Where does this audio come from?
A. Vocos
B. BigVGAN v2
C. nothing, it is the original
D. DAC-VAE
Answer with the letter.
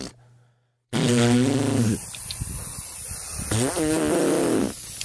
C